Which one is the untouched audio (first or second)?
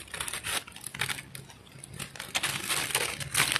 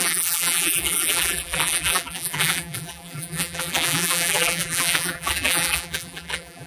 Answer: first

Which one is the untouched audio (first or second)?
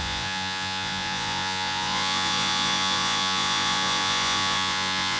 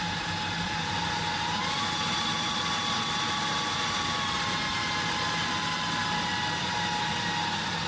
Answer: second